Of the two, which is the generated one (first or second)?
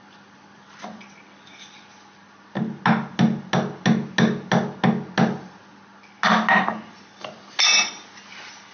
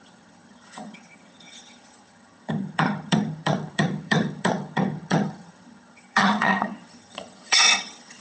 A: second